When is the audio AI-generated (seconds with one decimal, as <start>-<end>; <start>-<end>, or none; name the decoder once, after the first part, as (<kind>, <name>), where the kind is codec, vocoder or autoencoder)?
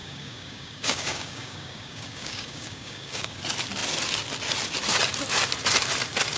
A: 0.0-3.4 (codec, DAC)